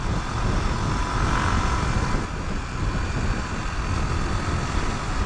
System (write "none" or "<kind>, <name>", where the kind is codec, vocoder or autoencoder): none